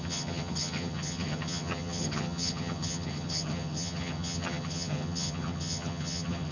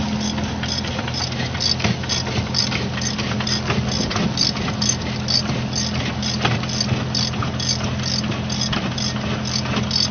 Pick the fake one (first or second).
first